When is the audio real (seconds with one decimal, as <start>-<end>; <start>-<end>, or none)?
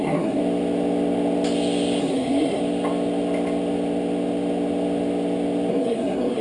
0.4-2.0; 2.6-5.7